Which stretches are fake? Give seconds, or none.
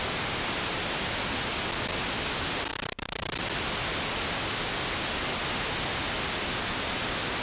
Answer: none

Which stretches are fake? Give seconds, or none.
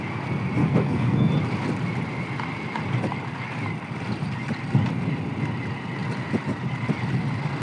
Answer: 0.6-1.3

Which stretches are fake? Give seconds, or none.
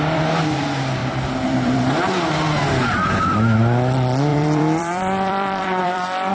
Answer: 1.0-1.9; 4.3-6.3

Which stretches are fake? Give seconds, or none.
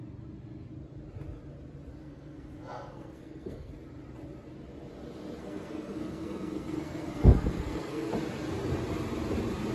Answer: 2.0-3.7; 5.4-8.1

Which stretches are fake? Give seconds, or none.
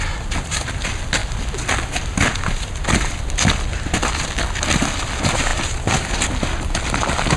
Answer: none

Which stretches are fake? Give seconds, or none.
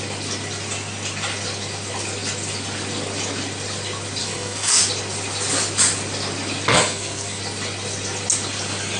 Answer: 4.2-4.8; 6.7-7.4